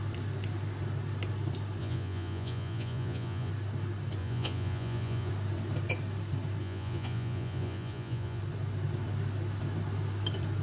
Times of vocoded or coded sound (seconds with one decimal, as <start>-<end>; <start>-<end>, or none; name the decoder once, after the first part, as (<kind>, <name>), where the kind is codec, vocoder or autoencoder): 1.8-3.5 (vocoder, Vocos); 4.2-5.3; 6.6-8.4